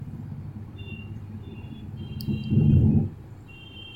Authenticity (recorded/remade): remade